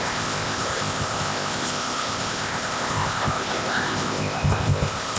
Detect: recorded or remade remade